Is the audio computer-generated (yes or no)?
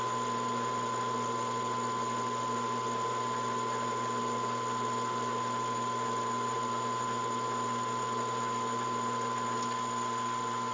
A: no